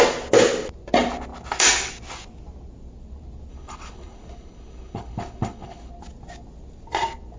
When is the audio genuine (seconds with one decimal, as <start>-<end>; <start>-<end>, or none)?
0.0-3.5; 5.9-7.4